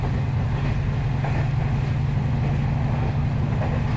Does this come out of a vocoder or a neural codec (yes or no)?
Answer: no